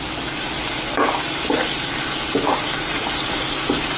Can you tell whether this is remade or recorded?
recorded